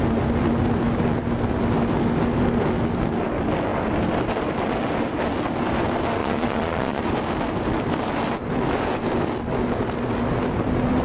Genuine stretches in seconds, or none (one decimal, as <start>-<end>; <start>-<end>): 0.0-6.2; 7.0-11.0